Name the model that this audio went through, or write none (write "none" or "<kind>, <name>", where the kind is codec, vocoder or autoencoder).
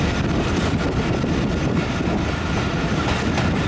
none